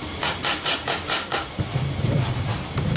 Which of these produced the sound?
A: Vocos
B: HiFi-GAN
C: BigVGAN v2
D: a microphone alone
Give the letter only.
C